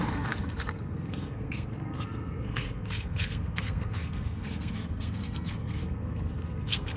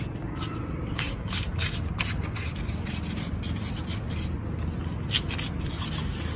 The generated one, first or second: first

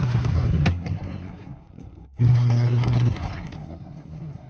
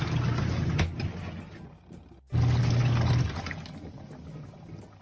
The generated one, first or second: first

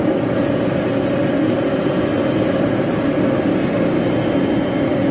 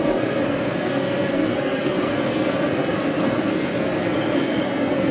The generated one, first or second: second